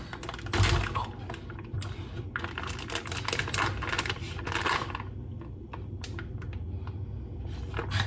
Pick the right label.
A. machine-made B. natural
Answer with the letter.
B